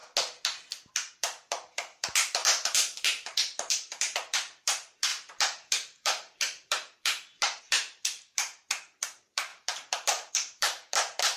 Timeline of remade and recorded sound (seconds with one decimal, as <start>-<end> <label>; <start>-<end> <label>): 0.0-0.9 recorded; 0.9-11.4 remade